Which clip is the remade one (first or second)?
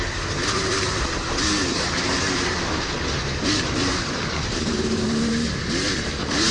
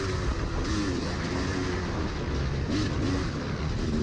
first